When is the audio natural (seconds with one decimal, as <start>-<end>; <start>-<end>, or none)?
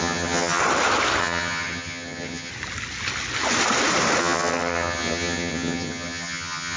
0.6-1.2; 2.5-4.2